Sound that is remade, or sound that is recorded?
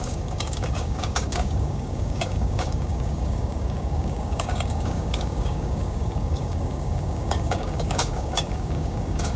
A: remade